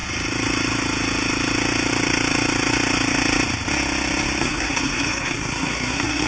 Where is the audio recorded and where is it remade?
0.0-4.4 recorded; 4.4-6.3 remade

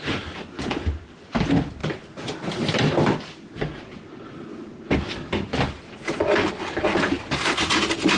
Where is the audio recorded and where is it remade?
0.0-8.2 recorded

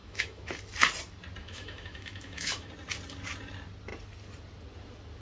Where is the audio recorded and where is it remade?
0.0-0.6 remade; 0.6-1.4 recorded; 1.4-2.7 remade; 2.7-5.2 recorded